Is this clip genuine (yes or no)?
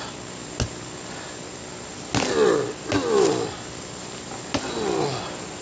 yes